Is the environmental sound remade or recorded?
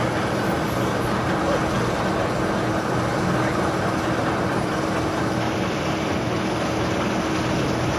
recorded